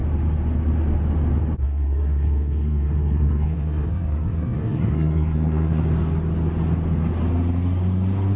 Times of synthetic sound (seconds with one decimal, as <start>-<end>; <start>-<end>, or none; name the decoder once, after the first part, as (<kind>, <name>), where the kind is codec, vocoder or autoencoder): 1.6-5.8 (codec, SNAC)